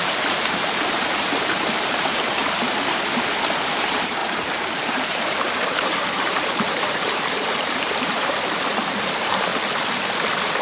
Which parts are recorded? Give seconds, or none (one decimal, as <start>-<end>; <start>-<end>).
2.4-3.7; 9.5-10.6